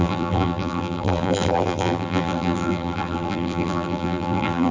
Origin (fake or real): fake